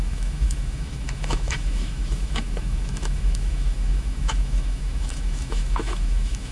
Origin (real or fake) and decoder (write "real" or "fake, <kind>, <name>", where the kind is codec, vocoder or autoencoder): fake, autoencoder, DAC-VAE